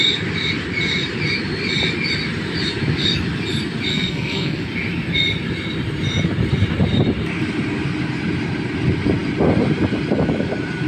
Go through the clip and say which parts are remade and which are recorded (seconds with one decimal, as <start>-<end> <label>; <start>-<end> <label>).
0.0-3.9 recorded; 3.9-4.6 remade; 4.6-10.9 recorded